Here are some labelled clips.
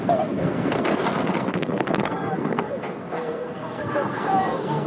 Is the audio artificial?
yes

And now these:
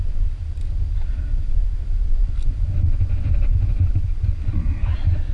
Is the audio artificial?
no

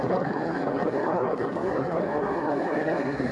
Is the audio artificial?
yes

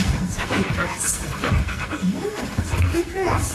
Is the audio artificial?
yes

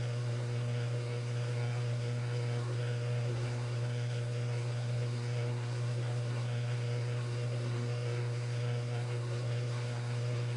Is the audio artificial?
yes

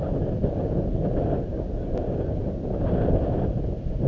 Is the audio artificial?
no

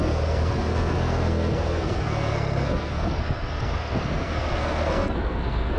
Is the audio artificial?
yes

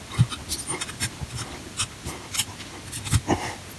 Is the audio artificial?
no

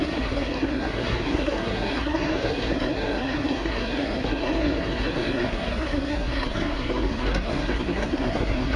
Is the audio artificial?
yes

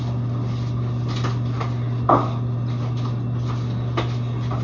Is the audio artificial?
no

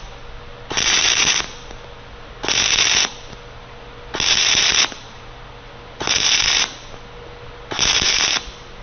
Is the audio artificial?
no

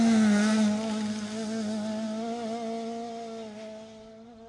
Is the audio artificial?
no